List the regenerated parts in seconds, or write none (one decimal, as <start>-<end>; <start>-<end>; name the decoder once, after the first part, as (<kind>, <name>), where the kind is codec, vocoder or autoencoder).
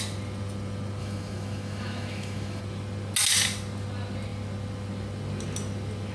1.0-2.6 (autoencoder, DAC-VAE)